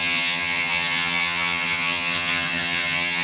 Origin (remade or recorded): remade